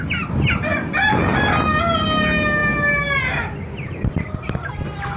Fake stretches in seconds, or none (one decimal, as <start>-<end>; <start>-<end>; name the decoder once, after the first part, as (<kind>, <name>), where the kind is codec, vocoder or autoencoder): 2.6-4.7 (vocoder, BigVGAN v2)